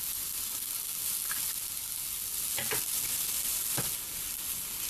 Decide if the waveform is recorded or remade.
recorded